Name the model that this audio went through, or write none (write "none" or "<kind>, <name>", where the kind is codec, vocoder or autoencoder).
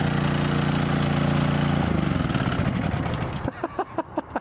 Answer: none